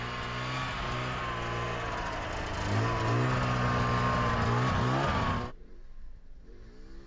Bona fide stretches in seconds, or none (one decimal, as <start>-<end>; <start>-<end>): 0.0-7.1